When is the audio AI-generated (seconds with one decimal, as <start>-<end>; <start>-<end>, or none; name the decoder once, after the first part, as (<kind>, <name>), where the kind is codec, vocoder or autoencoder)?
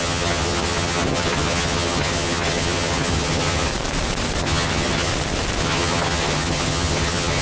0.0-3.7 (vocoder, HiFi-GAN); 4.4-5.1; 5.6-7.4